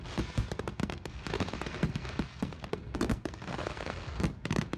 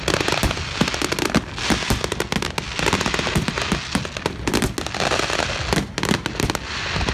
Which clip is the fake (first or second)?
first